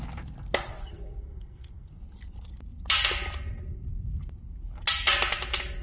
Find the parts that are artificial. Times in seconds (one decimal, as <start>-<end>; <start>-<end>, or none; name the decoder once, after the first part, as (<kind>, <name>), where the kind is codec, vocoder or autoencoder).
0.8-1.9 (codec, SNAC)